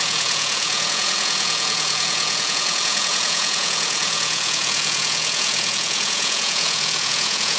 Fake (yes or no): yes